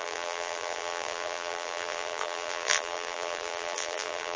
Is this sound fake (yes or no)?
yes